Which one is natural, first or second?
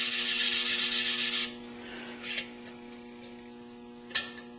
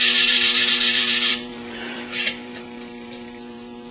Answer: first